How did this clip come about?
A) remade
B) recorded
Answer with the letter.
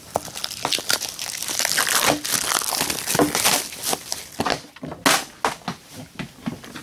B